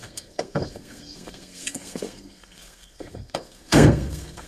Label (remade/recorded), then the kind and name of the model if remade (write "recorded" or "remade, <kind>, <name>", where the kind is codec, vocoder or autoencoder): remade, codec, SNAC